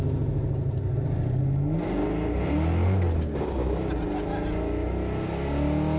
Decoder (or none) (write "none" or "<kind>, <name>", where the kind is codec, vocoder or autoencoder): none